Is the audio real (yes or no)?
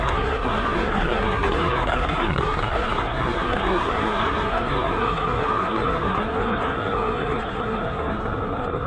no